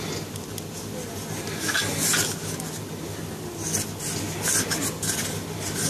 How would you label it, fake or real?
real